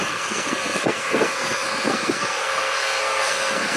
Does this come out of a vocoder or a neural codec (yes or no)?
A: yes